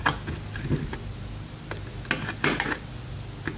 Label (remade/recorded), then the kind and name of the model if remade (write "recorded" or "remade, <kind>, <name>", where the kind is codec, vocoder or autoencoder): recorded